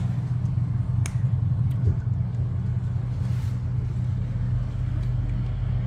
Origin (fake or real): real